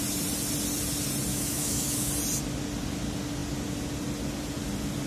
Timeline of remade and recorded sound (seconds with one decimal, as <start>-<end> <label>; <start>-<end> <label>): 0.0-1.3 recorded; 1.3-2.1 remade; 2.1-5.1 recorded